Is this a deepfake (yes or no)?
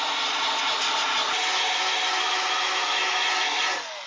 no